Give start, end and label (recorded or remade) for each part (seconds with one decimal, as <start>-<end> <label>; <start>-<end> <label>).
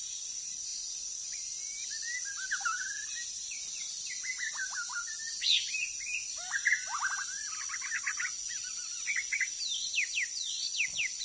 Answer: 0.0-11.2 recorded